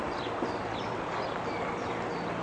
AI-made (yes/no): no